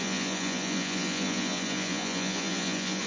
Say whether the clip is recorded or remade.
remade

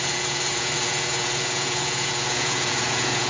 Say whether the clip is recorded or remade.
remade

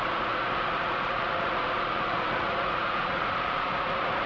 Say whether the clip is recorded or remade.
remade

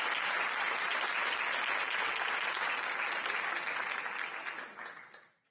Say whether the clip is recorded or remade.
recorded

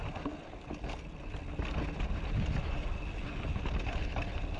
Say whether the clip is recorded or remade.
recorded